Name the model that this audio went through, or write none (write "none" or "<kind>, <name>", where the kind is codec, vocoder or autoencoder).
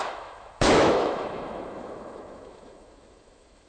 autoencoder, DAC-VAE